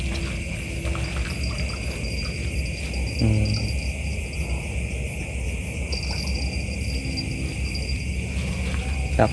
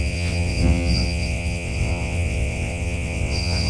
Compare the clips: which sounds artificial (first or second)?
second